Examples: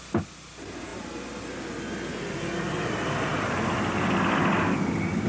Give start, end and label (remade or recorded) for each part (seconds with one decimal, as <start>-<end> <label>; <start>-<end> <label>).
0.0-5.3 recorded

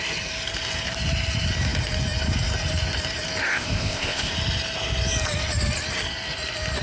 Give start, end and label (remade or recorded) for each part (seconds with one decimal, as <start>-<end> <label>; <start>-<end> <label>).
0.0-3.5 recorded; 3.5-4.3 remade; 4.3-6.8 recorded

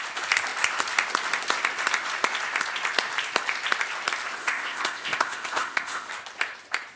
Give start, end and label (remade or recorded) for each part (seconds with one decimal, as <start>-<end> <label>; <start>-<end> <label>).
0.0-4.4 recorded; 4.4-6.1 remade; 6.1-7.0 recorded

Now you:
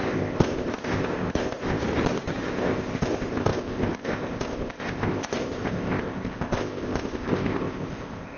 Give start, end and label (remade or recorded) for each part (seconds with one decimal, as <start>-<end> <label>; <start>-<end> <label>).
0.0-1.8 remade; 1.8-2.4 recorded; 2.4-8.4 remade

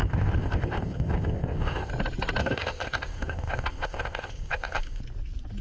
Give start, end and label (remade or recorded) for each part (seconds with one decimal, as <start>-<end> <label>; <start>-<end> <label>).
0.0-1.9 remade; 1.9-2.4 recorded; 2.4-5.0 remade; 5.0-5.6 recorded

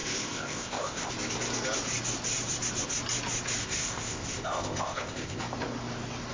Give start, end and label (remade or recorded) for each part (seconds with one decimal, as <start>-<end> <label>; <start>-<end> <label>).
0.0-1.1 remade; 1.1-3.6 recorded; 3.6-5.4 remade; 5.4-6.3 recorded

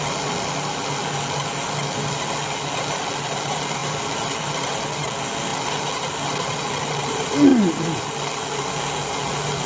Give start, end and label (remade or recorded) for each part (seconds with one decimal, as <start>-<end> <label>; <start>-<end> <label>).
0.0-9.7 recorded

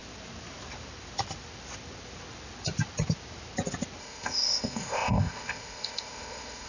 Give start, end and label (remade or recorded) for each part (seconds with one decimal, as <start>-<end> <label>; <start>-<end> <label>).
0.0-4.0 recorded; 4.0-6.7 remade